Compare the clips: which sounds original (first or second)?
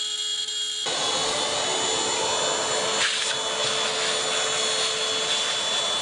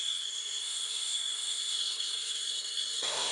first